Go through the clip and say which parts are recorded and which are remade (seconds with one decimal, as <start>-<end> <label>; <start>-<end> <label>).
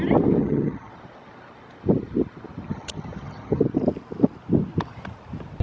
0.0-0.4 recorded; 0.4-0.9 remade; 0.9-2.7 recorded; 2.7-3.6 remade; 3.6-5.6 recorded